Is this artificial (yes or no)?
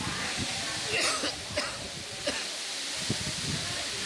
no